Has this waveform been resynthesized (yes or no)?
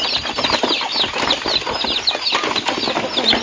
no